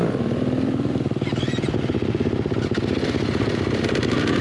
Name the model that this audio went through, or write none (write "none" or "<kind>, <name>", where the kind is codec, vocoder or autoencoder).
none